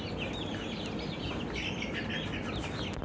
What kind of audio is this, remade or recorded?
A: recorded